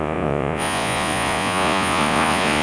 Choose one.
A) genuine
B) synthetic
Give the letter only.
B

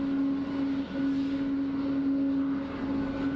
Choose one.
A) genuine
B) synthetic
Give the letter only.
A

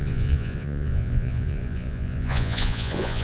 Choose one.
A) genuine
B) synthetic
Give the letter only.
B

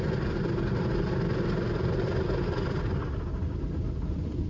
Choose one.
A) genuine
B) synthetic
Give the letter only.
A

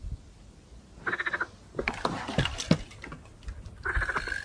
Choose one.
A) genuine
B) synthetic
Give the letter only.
A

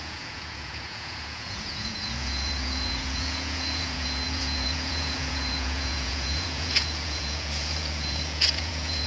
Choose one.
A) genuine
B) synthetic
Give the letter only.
B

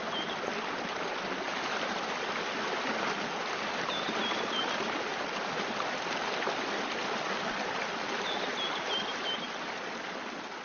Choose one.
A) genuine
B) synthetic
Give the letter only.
A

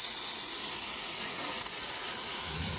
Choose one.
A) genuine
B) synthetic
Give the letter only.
B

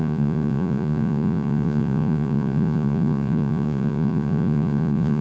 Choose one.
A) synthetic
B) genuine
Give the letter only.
A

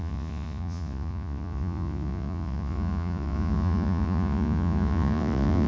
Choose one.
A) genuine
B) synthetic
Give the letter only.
B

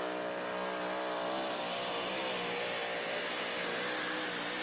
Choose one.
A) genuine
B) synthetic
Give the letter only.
A